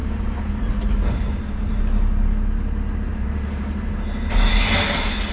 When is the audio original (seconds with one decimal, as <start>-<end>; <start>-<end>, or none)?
1.8-3.1; 3.9-5.3